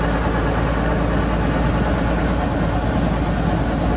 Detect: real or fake real